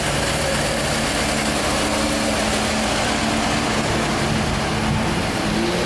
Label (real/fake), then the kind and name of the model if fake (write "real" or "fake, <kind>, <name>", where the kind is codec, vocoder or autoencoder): real